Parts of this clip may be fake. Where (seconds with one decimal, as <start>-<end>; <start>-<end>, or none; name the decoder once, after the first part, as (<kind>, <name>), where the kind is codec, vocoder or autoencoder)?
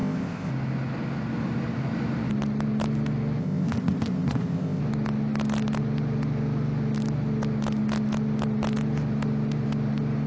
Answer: 0.0-0.5 (codec, ZipCodec); 3.4-4.8